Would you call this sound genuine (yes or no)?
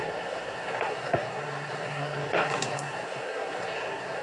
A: no